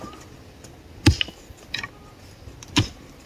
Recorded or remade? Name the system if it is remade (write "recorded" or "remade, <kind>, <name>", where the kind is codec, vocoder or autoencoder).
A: recorded